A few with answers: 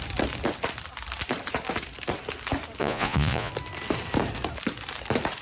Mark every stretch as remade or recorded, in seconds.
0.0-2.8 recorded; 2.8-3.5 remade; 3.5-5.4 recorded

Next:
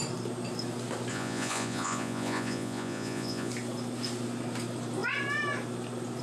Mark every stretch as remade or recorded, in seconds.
0.0-1.1 recorded; 1.1-3.5 remade; 3.5-6.2 recorded

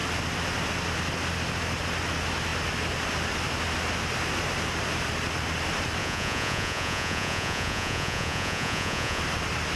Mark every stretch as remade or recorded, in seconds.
0.0-6.0 recorded; 6.0-9.2 remade; 9.2-9.8 recorded